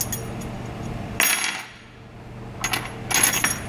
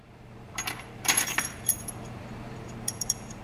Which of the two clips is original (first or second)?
first